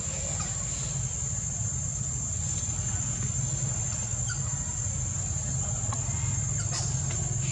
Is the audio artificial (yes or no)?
no